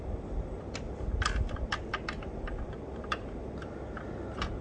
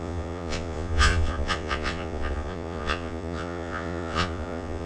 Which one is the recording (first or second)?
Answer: first